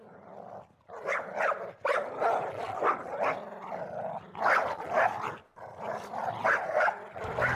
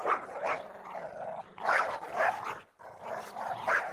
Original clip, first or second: first